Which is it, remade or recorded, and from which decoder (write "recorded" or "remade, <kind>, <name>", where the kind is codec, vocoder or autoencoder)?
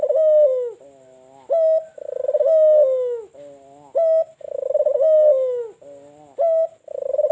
recorded